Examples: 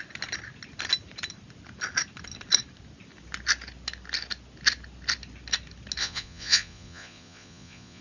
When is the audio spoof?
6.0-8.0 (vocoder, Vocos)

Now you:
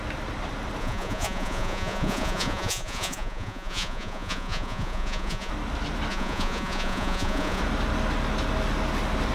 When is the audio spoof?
0.8-5.5 (vocoder, Vocos); 6.1-7.6

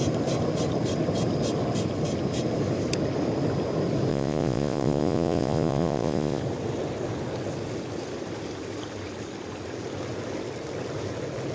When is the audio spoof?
4.1-6.4 (vocoder, Vocos)

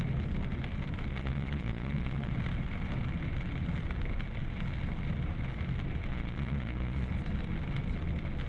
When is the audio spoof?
1.1-2.3 (vocoder, Vocos); 6.1-7.1

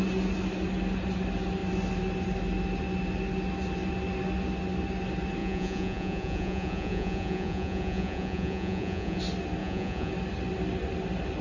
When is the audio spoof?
5.4-9.2 (vocoder, Vocos); 9.6-10.1

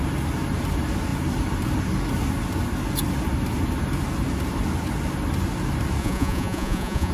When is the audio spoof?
6.0-7.1 (vocoder, Vocos)